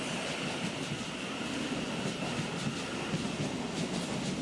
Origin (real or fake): real